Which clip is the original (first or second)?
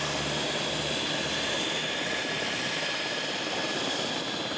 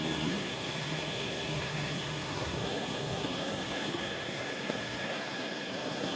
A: first